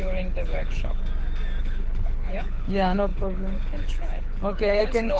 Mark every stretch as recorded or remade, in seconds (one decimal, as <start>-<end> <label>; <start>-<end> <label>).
0.0-1.0 remade; 1.0-1.6 recorded; 1.6-5.2 remade